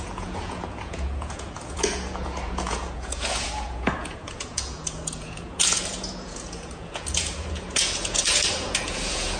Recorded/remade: remade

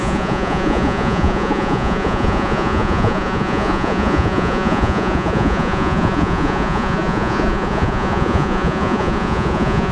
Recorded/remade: remade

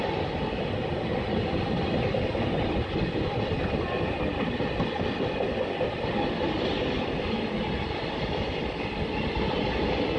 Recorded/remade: recorded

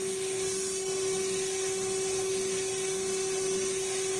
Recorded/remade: recorded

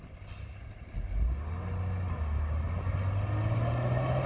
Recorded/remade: recorded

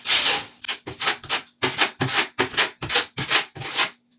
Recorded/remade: recorded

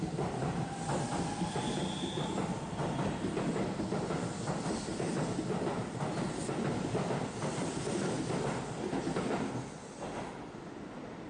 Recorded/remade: recorded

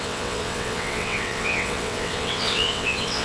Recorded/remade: remade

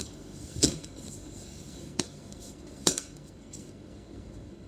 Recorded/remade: remade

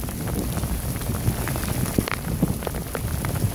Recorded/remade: remade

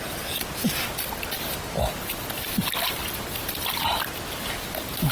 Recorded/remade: recorded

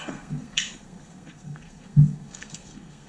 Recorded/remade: remade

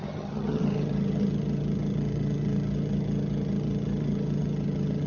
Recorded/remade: remade